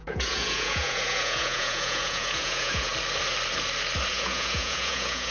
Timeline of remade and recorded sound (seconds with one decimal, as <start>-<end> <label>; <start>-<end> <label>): 0.0-2.9 remade; 2.9-4.1 recorded; 4.1-5.3 remade